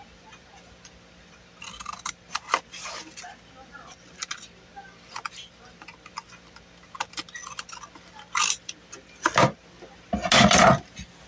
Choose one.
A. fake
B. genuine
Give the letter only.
B